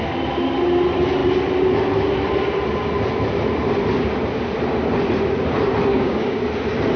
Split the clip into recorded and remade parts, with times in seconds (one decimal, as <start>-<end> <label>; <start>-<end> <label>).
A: 0.0-5.9 recorded; 5.9-6.4 remade; 6.4-7.0 recorded